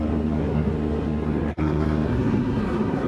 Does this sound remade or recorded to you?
remade